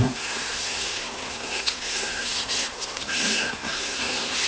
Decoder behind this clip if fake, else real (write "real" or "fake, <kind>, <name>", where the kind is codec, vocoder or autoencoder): fake, codec, SNAC